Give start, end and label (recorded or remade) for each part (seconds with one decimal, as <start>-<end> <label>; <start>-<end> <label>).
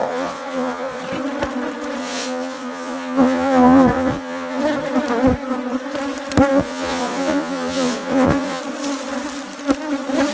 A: 0.0-1.0 remade; 1.0-2.0 recorded; 2.0-4.6 remade; 4.6-6.5 recorded; 6.5-8.6 remade; 8.6-10.3 recorded